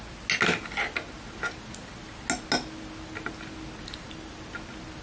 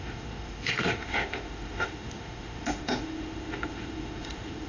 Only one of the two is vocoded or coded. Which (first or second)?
second